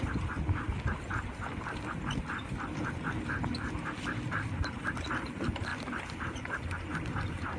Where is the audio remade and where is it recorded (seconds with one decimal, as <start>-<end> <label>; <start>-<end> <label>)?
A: 0.0-7.6 recorded